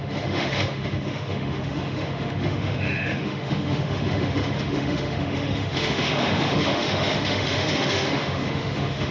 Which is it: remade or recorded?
remade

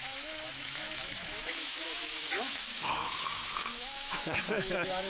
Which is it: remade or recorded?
remade